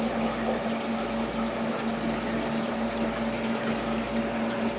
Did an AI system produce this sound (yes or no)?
no